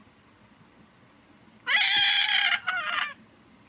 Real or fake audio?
real